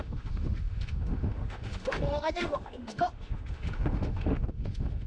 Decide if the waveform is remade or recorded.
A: remade